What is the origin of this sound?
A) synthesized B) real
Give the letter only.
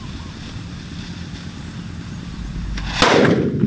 B